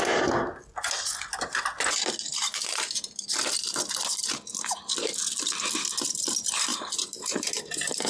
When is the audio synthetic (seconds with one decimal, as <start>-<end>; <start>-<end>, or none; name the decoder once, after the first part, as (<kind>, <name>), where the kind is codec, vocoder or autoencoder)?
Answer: 2.3-3.4 (vocoder, BigVGAN v2); 6.7-8.1